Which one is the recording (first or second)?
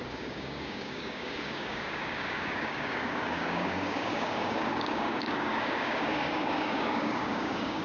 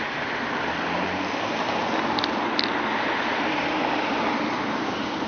second